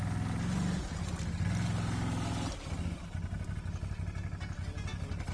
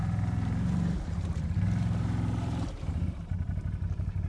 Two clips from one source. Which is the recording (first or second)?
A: first